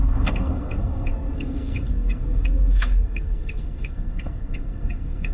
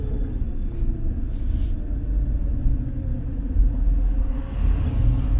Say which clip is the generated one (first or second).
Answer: first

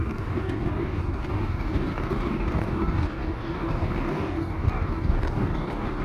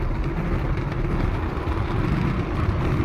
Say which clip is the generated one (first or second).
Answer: first